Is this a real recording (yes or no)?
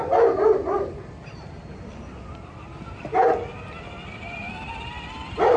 yes